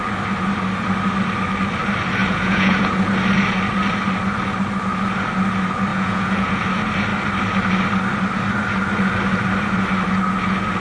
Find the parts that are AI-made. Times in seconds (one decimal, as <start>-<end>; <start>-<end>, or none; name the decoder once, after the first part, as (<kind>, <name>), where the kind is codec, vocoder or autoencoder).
2.2-3.1 (vocoder, Vocos); 5.9-6.6